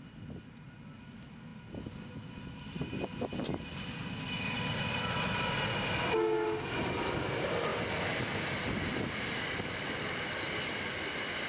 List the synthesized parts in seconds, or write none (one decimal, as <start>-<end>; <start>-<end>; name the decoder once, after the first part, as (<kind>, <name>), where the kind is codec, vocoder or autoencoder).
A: none